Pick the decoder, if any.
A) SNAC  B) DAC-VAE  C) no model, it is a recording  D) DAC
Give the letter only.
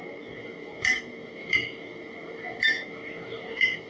B